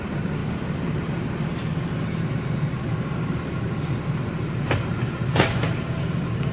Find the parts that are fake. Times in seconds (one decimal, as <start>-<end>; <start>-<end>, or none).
none